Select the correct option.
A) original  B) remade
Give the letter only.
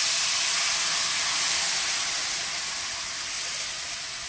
A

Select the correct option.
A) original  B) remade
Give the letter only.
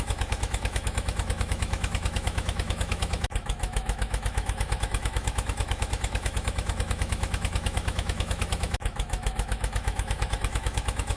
B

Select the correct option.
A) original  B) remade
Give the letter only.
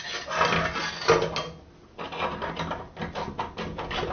A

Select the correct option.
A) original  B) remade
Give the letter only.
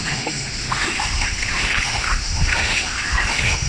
B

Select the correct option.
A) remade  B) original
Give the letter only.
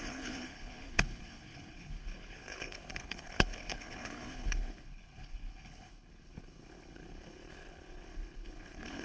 A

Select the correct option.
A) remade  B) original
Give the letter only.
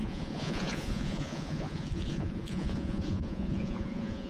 A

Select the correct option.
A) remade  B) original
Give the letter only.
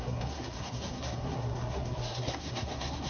A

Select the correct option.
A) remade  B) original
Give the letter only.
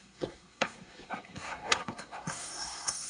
A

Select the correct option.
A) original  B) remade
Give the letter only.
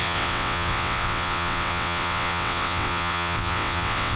B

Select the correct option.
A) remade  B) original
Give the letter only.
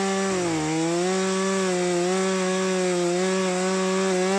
B